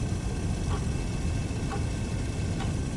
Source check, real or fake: real